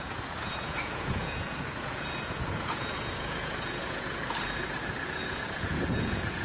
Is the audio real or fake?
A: fake